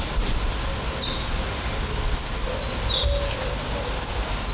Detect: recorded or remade recorded